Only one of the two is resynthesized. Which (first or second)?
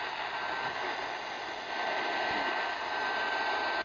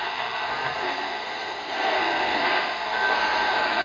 second